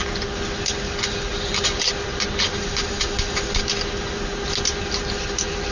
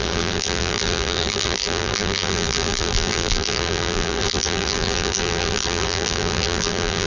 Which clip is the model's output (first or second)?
second